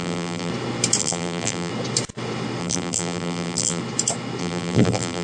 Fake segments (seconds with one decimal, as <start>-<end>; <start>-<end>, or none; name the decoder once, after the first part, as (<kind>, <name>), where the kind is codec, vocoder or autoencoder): 0.0-0.5 (vocoder, BigVGAN v2); 1.0-1.7; 2.6-3.8; 4.4-5.2